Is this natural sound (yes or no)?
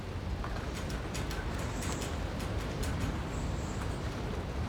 yes